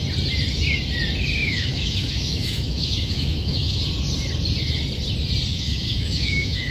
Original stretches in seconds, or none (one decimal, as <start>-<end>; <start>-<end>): 0.0-1.4; 3.8-5.5